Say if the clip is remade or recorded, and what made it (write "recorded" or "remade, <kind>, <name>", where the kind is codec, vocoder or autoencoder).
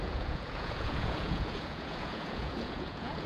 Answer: remade, vocoder, Vocos